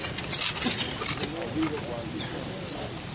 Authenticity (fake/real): real